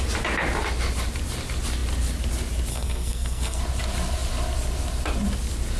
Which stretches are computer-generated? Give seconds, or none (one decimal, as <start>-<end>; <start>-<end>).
2.7-3.6